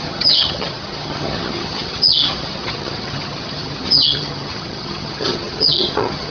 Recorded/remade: remade